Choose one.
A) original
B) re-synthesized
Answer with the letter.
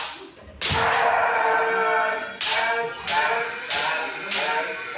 A